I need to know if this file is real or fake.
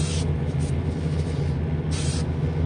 real